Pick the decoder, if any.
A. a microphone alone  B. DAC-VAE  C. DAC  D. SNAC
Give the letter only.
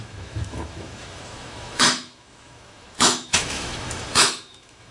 B